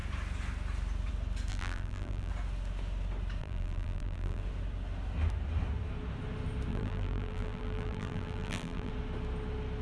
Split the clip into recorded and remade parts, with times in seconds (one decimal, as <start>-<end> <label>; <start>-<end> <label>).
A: 0.0-1.5 recorded; 1.5-2.3 remade; 2.3-3.4 recorded; 3.4-4.4 remade; 4.4-6.7 recorded; 6.7-8.9 remade; 8.9-9.8 recorded